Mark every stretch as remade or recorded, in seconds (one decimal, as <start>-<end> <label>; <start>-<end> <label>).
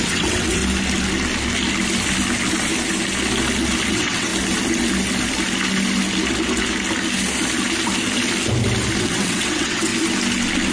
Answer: 0.0-0.6 remade; 0.6-3.9 recorded; 3.9-4.3 remade; 4.3-9.0 recorded; 9.0-9.9 remade; 9.9-10.7 recorded